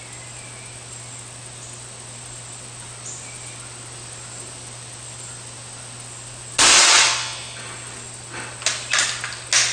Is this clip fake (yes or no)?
no